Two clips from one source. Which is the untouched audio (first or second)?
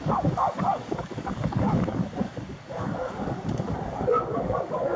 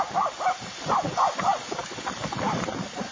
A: second